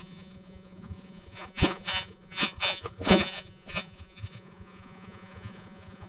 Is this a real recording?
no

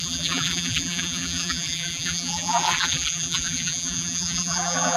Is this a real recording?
no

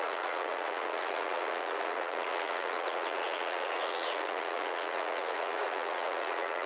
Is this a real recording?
no